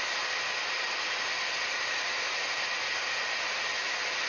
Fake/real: real